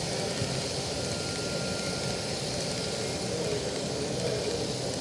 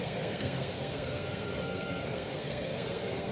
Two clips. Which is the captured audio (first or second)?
first